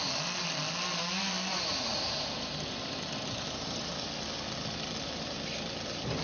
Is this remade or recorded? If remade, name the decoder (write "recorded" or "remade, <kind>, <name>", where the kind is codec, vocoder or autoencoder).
recorded